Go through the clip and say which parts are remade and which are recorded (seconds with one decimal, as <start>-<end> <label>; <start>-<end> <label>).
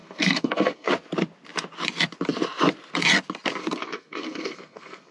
0.0-0.9 remade; 0.9-3.6 recorded; 3.6-5.1 remade